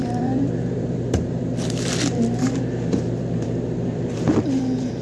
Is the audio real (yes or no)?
no